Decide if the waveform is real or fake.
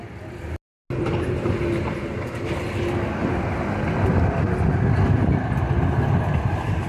real